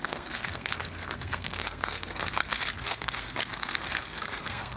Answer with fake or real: fake